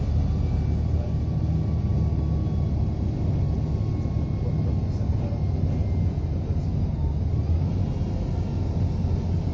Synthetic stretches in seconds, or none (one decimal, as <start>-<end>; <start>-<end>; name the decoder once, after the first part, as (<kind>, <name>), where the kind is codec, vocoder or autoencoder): none